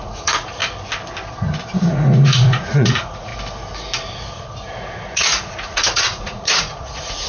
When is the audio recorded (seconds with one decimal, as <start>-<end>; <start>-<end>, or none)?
0.6-1.8; 3.3-4.8